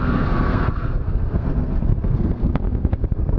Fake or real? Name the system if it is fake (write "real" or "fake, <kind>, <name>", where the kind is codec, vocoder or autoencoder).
fake, codec, SNAC